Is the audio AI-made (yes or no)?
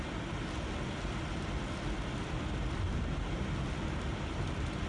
no